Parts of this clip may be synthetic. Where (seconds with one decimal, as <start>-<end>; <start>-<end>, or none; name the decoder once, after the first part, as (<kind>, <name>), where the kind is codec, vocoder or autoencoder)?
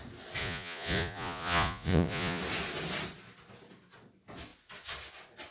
0.4-2.4 (vocoder, Vocos)